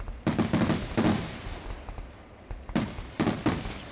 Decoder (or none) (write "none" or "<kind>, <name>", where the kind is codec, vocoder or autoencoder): none